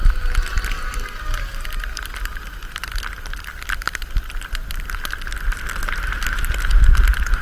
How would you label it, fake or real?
real